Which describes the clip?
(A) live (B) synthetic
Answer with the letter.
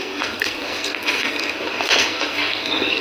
B